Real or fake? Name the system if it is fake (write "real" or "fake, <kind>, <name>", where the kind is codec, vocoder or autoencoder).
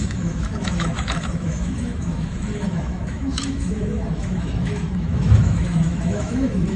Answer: fake, autoencoder, DAC-VAE